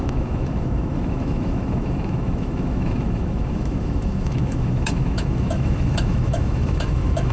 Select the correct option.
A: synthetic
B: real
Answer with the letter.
A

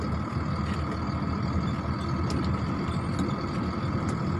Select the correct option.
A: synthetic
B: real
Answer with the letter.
B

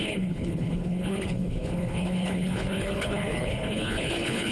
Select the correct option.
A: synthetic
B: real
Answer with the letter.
A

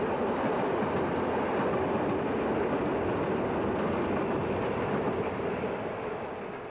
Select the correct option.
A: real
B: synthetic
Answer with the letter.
A